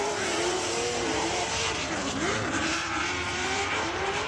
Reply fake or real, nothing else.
fake